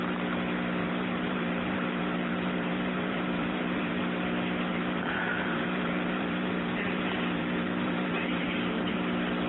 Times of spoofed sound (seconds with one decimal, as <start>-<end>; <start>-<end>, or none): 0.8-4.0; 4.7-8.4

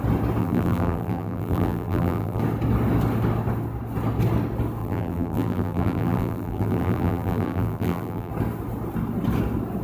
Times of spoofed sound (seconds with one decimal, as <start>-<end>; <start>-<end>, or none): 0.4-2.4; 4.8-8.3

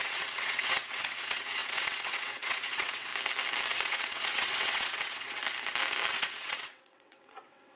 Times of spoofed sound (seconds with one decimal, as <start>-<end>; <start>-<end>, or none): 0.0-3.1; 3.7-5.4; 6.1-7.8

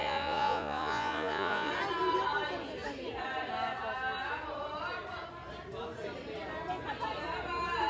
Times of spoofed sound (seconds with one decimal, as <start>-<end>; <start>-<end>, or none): 0.0-1.7

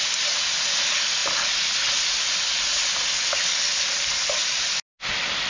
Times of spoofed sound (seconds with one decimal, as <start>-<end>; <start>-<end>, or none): none

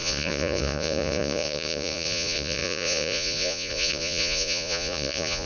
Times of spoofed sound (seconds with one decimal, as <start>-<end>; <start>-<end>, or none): 0.0-5.5